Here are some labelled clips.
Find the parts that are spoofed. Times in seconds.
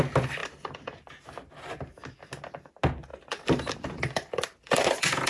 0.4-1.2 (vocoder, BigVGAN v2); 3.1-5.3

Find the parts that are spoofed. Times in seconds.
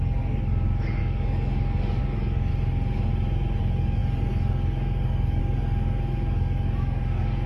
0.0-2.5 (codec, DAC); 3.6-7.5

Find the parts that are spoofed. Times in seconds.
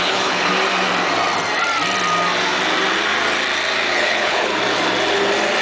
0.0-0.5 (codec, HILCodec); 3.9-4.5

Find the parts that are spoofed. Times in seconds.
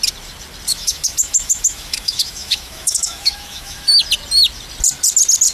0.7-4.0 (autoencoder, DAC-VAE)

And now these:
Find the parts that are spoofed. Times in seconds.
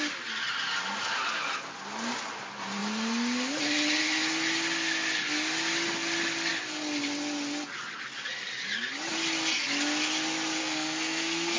10.6-11.6 (codec, SNAC)